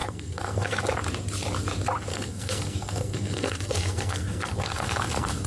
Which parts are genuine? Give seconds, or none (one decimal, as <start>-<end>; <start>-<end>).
0.8-2.1